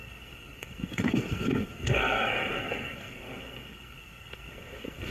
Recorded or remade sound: remade